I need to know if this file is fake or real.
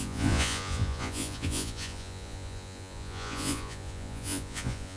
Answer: fake